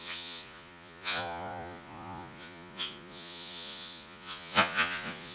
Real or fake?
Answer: fake